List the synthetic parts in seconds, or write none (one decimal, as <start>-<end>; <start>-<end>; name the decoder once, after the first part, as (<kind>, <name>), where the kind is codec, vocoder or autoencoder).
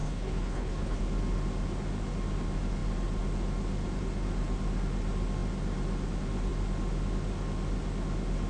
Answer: 0.0-1.0 (codec, HILCodec)